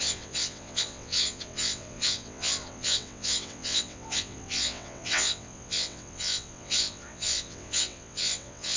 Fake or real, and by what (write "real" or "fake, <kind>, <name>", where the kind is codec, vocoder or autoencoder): fake, vocoder, WaveNeXt